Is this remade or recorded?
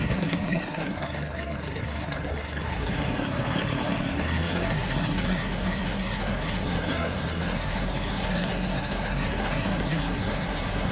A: remade